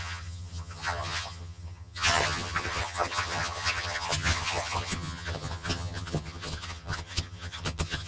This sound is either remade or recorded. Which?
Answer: remade